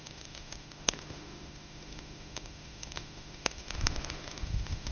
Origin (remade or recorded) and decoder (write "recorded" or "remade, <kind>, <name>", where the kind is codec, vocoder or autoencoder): remade, autoencoder, DAC-VAE